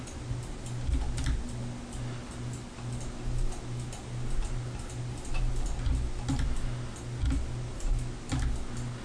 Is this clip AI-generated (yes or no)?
no